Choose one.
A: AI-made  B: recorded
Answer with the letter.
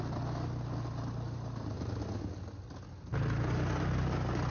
B